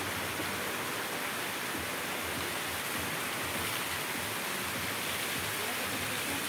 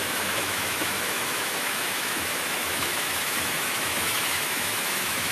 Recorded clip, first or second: first